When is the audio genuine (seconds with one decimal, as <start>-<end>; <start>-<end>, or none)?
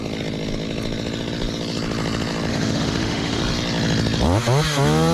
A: 0.0-2.5; 3.4-5.1